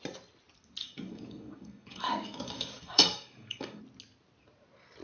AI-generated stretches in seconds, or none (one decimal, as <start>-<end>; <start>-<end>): 0.8-3.8